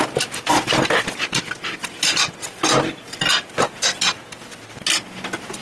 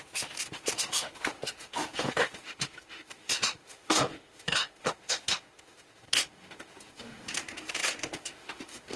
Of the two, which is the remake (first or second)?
second